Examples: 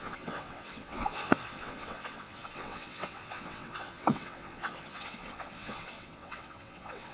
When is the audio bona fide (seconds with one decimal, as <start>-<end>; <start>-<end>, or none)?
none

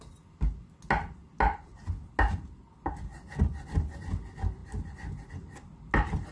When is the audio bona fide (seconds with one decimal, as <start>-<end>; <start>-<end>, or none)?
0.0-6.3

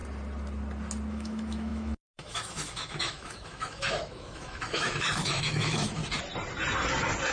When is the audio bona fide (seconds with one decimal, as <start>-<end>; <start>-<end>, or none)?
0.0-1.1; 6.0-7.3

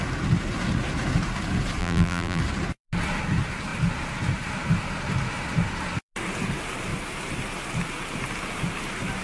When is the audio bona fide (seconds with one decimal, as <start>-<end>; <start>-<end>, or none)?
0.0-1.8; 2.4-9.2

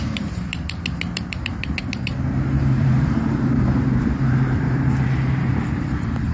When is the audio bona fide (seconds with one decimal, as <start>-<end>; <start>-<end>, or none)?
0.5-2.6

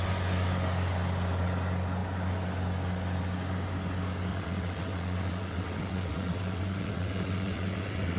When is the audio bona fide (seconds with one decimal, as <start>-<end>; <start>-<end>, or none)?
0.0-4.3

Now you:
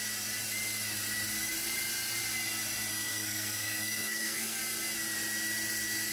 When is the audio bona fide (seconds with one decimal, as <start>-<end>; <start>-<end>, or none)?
0.0-2.9; 4.6-6.1

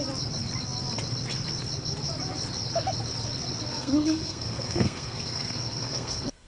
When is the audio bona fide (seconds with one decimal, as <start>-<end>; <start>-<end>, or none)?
0.0-3.7